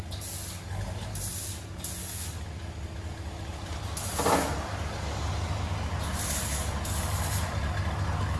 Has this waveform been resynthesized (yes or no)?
no